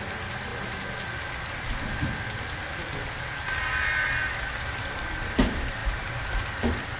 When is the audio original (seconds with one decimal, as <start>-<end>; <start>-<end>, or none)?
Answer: 0.0-7.0